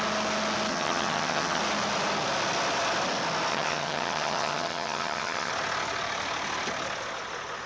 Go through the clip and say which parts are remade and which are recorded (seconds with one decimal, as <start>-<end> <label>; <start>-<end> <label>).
0.0-0.7 recorded; 0.7-1.6 remade; 1.6-3.5 recorded; 3.5-5.5 remade; 5.5-7.7 recorded